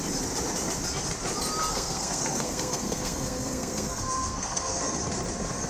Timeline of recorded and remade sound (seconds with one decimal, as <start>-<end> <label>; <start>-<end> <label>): 0.0-1.7 recorded; 1.7-4.8 remade; 4.8-5.7 recorded